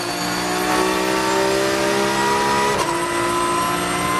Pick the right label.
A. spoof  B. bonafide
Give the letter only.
B